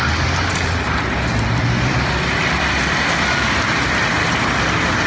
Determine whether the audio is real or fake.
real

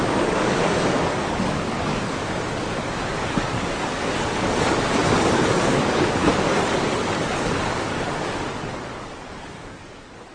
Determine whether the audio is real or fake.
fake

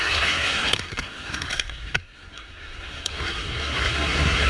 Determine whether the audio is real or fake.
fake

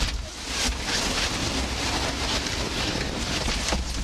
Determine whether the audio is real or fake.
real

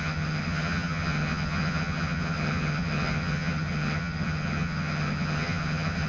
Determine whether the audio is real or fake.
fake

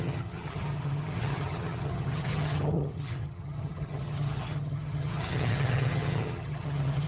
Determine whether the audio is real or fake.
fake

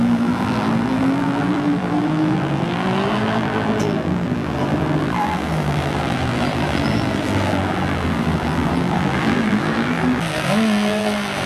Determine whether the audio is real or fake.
fake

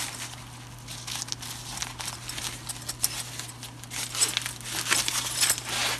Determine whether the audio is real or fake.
real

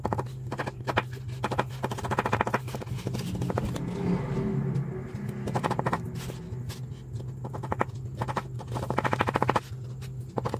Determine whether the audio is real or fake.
real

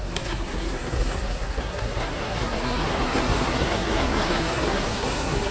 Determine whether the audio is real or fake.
fake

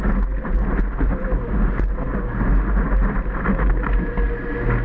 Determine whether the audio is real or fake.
real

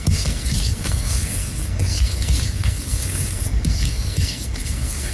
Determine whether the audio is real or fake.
fake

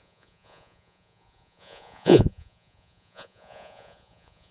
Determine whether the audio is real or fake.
fake